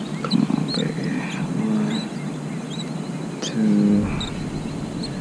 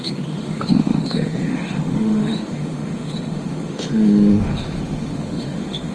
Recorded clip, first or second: first